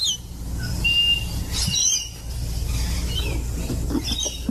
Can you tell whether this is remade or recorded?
recorded